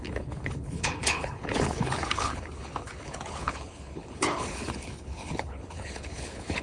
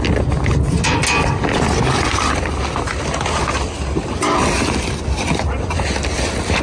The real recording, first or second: second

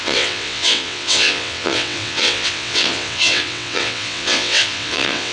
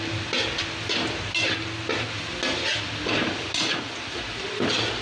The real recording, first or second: second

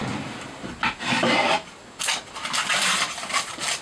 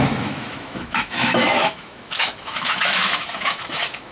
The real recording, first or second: first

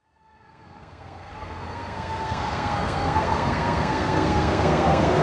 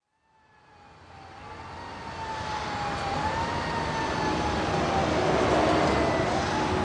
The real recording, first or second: second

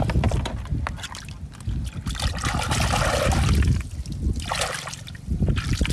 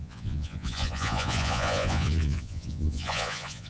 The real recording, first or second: first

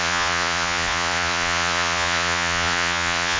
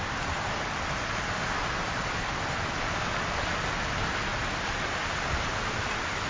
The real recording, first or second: second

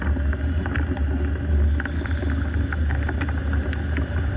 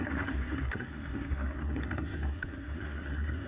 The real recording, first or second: first